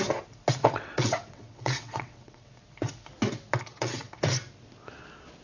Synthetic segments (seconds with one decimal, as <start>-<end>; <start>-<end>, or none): 0.6-2.5; 3.7-4.2

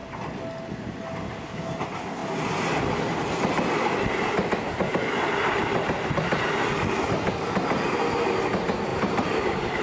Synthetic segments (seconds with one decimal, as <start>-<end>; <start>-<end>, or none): 2.2-2.8; 8.9-9.8